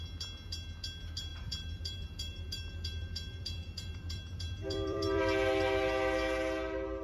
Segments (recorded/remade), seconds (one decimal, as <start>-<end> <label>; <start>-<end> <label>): 0.0-1.3 recorded; 1.3-5.2 remade; 5.2-7.0 recorded